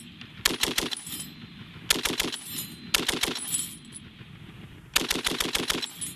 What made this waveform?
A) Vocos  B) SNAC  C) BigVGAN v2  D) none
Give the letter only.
D